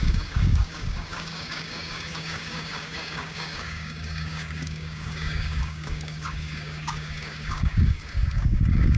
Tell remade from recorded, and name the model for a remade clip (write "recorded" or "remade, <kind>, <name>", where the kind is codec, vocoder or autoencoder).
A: remade, codec, DAC